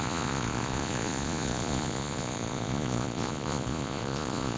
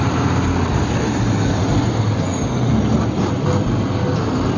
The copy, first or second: first